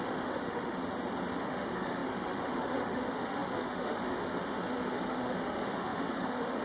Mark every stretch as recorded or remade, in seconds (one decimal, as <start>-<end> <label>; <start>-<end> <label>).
0.0-0.8 remade; 0.8-1.4 recorded; 1.4-6.6 remade